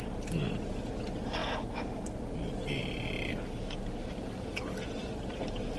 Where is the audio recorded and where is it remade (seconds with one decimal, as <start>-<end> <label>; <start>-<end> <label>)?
0.0-5.8 recorded